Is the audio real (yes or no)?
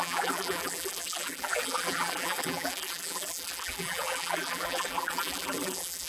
no